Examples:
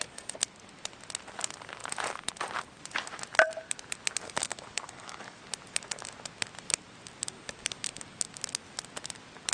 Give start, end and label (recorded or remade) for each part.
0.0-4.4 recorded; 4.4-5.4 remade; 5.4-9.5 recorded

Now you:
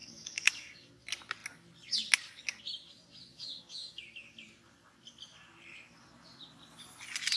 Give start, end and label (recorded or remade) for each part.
0.0-0.9 remade; 0.9-3.3 recorded; 3.3-4.0 remade; 4.0-7.4 recorded

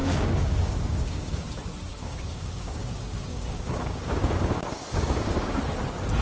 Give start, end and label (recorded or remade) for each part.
0.0-1.4 remade; 1.4-1.9 recorded; 1.9-5.6 remade; 5.6-6.2 recorded

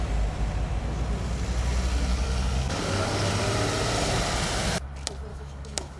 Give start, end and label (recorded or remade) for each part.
0.0-2.1 recorded; 2.1-3.3 remade; 3.3-5.3 recorded; 5.3-6.0 remade

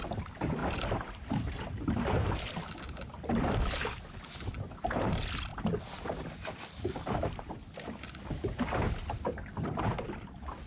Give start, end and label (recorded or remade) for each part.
0.0-10.7 recorded

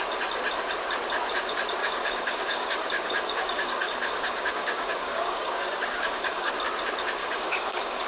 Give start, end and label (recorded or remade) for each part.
0.0-1.8 recorded; 1.8-6.5 remade; 6.5-7.2 recorded; 7.2-8.1 remade

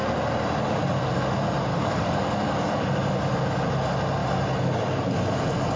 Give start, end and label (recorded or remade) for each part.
0.0-1.7 recorded; 1.7-2.9 remade; 2.9-5.8 recorded

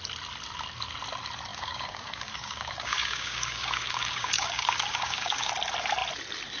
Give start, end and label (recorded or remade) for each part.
0.0-1.5 recorded; 1.5-5.5 remade; 5.5-6.6 recorded